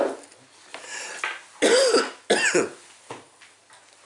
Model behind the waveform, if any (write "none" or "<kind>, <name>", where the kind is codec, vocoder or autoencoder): none